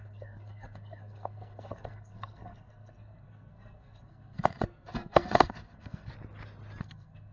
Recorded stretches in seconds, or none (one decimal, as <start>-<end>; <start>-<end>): 6.1-6.8